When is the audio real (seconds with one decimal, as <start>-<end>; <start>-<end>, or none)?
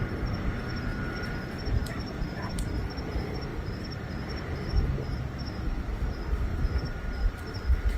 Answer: 0.0-3.5; 4.5-8.0